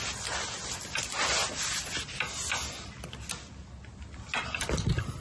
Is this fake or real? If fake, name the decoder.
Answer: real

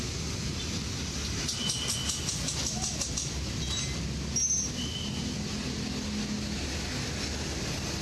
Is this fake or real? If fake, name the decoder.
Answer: real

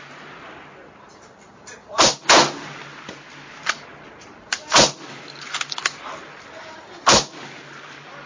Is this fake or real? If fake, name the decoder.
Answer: real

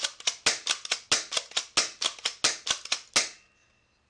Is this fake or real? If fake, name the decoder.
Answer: real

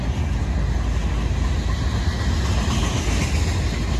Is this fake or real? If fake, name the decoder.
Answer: real